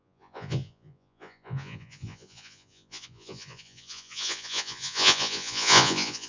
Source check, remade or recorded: remade